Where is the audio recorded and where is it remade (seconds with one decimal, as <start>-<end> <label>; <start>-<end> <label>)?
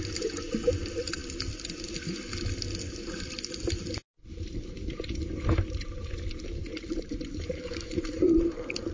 0.0-4.2 recorded; 4.2-8.9 remade